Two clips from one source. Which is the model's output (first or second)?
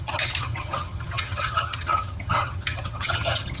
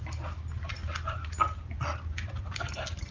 first